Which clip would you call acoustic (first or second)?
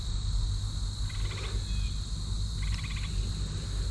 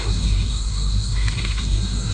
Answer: first